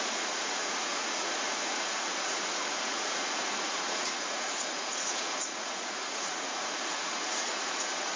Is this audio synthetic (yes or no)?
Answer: yes